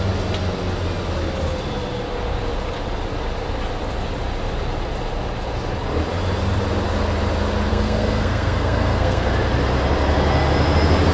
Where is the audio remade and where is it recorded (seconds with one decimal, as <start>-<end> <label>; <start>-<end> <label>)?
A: 0.0-7.7 recorded; 7.7-9.3 remade; 9.3-11.1 recorded